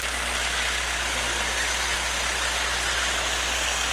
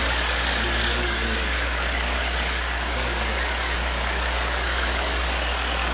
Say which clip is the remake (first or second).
second